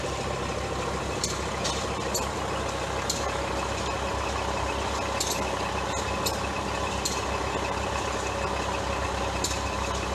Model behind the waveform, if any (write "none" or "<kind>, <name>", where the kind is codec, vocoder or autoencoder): none